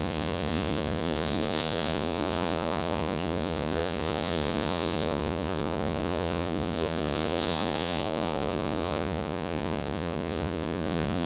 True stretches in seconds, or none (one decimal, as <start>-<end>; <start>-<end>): none

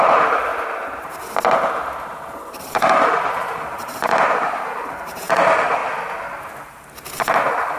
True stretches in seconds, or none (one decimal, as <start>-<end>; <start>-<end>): 0.5-2.6; 5.8-6.6

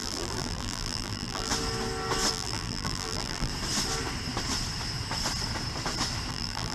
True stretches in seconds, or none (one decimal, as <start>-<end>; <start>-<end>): 1.5-2.3; 3.5-6.3

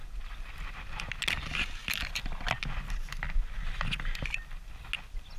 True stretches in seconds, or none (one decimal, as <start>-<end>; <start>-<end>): 0.0-5.4

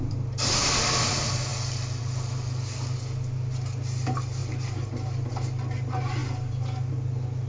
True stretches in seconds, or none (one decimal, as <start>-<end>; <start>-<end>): 0.0-7.5